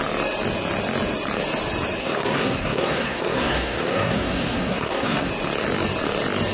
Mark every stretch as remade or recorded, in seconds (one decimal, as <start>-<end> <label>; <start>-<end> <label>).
0.0-2.0 recorded; 2.0-5.3 remade; 5.3-6.5 recorded